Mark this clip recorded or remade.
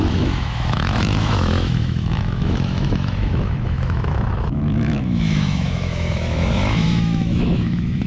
remade